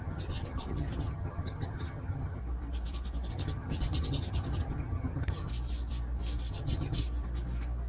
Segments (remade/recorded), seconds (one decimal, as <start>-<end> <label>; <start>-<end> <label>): 0.0-2.4 remade; 2.4-3.3 recorded; 3.3-5.5 remade; 5.5-6.5 recorded; 6.5-7.0 remade; 7.0-7.9 recorded